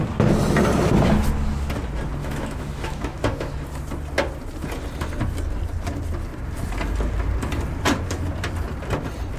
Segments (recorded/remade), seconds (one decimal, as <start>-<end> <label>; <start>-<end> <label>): 0.0-2.2 recorded; 2.2-3.5 remade; 3.5-9.4 recorded